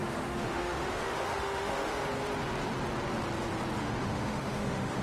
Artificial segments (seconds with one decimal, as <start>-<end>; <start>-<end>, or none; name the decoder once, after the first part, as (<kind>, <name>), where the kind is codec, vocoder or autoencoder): 0.0-2.0 (autoencoder, DAC-VAE); 3.8-5.0